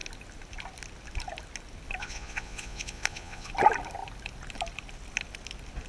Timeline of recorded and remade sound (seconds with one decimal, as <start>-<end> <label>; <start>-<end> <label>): 0.0-2.0 recorded; 2.0-3.5 remade; 3.5-5.9 recorded

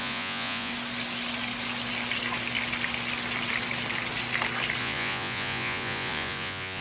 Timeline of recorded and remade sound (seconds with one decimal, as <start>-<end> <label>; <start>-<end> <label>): 0.0-0.7 remade; 0.7-4.8 recorded; 4.8-6.8 remade

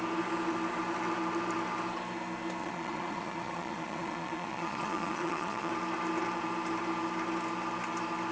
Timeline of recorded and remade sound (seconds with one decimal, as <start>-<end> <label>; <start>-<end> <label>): 0.0-2.6 recorded; 2.6-5.7 remade; 5.7-8.3 recorded

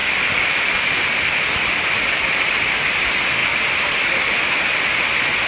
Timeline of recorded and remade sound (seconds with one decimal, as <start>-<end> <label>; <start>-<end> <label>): 0.0-2.7 remade; 2.7-3.4 recorded; 3.4-5.0 remade; 5.0-5.5 recorded

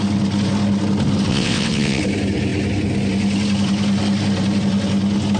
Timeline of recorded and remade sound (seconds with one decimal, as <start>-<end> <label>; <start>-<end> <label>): 0.0-1.3 recorded; 1.3-2.0 remade; 2.0-5.4 recorded

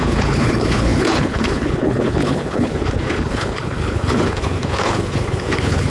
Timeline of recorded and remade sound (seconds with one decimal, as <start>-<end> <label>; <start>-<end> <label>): 0.0-5.9 remade

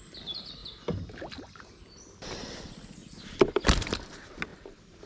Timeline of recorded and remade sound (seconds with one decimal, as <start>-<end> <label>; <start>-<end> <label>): 0.0-3.0 recorded; 3.0-4.1 remade; 4.1-5.1 recorded

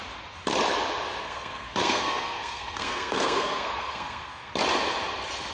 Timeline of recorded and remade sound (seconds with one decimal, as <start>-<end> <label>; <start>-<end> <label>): 0.0-1.2 recorded; 1.2-4.5 remade; 4.5-5.5 recorded